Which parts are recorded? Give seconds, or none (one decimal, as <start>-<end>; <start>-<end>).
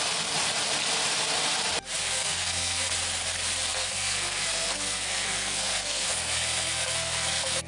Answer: 0.0-2.0; 2.9-3.7